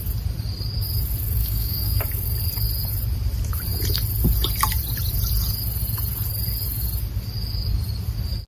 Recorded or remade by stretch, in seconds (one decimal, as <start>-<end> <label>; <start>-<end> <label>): 0.0-1.4 recorded; 1.4-2.0 remade; 2.0-8.5 recorded